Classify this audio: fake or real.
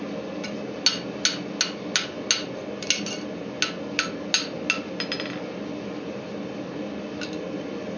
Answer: real